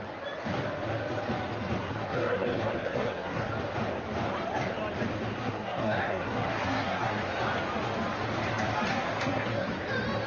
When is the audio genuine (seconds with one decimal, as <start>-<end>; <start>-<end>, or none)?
0.0-1.8; 3.5-5.4; 7.3-8.9; 9.7-10.3